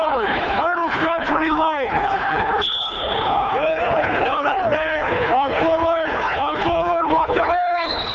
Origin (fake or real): fake